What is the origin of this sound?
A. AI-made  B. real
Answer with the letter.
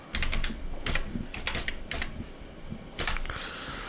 B